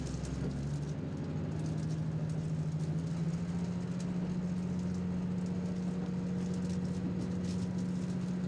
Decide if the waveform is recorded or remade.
recorded